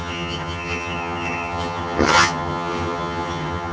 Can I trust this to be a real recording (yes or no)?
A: no